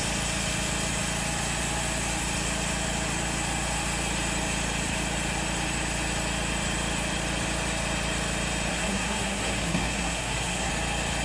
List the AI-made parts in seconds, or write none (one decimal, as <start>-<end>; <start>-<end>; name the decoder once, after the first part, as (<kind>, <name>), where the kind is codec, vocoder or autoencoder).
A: 8.7-10.7 (codec, SNAC)